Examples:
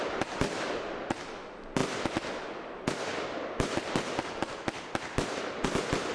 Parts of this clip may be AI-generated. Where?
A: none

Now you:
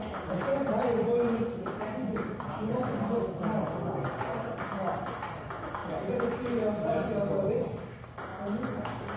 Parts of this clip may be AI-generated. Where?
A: none

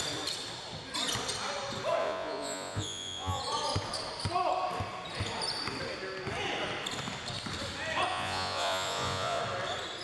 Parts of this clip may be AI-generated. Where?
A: 2.0-3.4 (vocoder, Vocos); 8.1-9.4

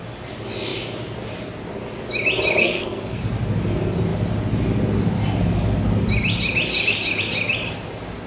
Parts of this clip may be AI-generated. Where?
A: 2.6-3.2 (codec, SNAC)

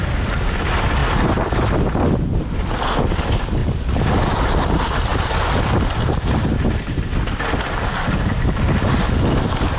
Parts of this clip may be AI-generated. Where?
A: none

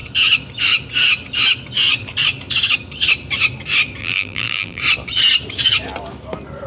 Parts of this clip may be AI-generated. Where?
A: 4.0-4.8 (vocoder, BigVGAN v2)

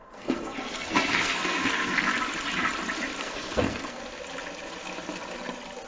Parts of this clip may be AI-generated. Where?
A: 0.0-2.1 (codec, SNAC); 3.2-4.0